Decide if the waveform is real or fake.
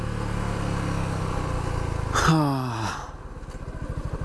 real